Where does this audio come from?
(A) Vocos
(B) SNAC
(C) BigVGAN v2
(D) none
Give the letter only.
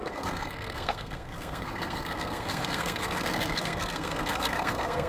B